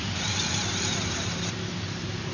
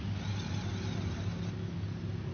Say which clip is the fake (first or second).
first